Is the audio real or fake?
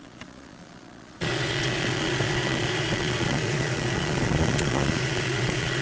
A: fake